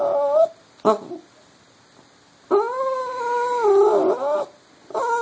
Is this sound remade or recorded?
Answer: recorded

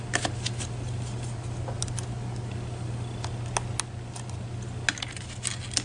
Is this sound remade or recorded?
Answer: recorded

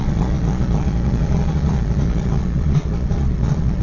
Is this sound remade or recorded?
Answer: remade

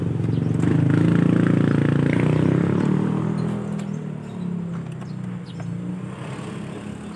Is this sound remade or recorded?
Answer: recorded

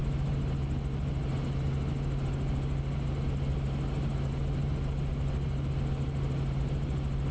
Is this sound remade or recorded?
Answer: recorded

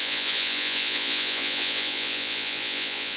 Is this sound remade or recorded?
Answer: remade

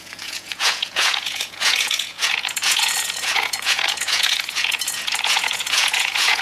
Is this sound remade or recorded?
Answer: remade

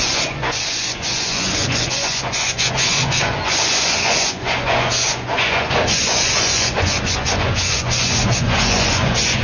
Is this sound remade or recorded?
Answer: remade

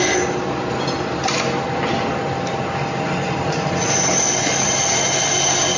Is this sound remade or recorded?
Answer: recorded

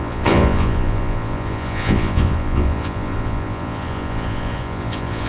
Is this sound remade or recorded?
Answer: remade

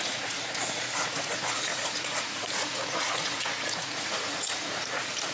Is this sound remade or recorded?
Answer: remade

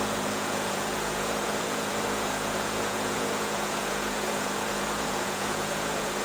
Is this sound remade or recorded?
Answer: remade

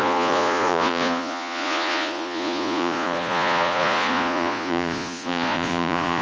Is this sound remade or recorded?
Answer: remade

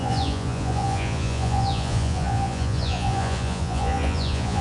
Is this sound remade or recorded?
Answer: remade